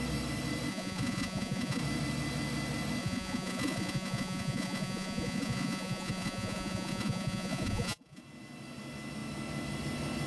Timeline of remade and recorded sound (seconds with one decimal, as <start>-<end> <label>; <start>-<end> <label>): 0.0-0.7 recorded; 0.7-1.8 remade; 1.8-3.0 recorded; 3.0-8.2 remade; 8.2-10.3 recorded

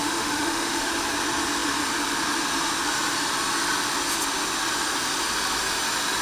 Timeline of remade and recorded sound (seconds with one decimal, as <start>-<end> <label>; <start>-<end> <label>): 0.0-0.9 remade; 0.9-6.2 recorded

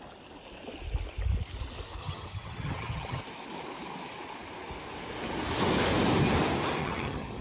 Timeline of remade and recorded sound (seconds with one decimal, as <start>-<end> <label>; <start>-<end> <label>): 0.0-2.0 recorded; 2.0-3.2 remade; 3.2-6.8 recorded; 6.8-7.4 remade

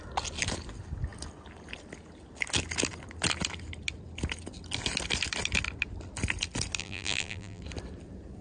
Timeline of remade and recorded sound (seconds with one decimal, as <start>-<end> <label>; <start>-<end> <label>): 0.0-6.8 recorded; 6.8-7.6 remade; 7.6-8.4 recorded

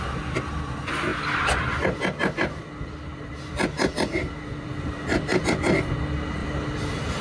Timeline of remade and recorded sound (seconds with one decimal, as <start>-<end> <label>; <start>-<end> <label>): 0.0-1.1 recorded; 1.1-5.4 remade; 5.4-6.4 recorded; 6.4-7.2 remade